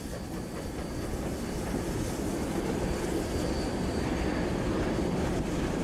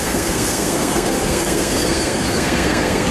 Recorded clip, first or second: first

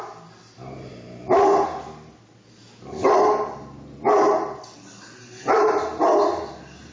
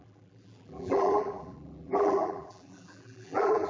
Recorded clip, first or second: first